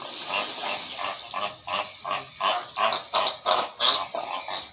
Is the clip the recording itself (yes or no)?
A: yes